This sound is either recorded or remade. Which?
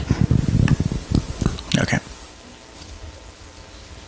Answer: recorded